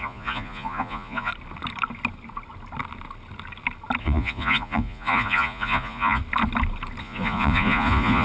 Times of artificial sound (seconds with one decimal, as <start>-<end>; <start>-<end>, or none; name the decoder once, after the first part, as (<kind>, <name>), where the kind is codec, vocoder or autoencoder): 0.0-1.3 (vocoder, Vocos); 4.0-6.2; 7.0-8.2